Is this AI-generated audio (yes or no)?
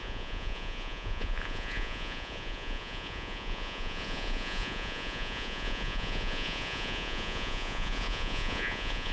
yes